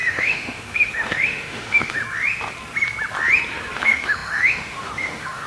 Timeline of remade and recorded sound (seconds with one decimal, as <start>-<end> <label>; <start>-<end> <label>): 0.0-2.0 remade; 2.0-3.8 recorded; 3.8-5.5 remade